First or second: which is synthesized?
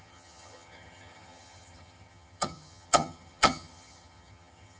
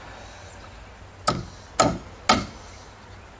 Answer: first